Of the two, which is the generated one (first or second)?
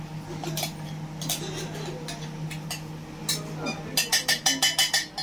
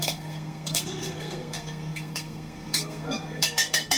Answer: second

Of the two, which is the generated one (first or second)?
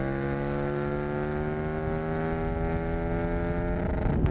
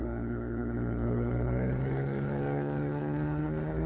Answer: second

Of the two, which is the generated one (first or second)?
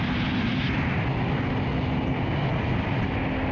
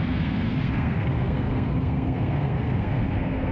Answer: second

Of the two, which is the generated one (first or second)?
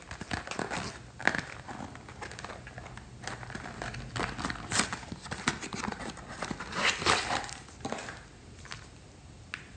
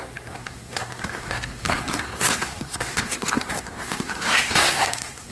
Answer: second